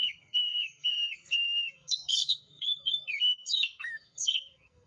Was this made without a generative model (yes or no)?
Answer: no